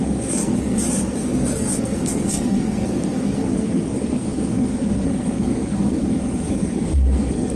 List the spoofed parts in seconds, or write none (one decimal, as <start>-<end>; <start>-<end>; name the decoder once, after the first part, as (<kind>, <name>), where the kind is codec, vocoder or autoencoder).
0.0-7.6 (codec, SNAC)